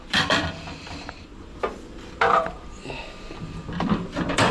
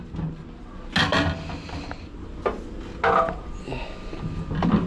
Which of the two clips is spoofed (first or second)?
first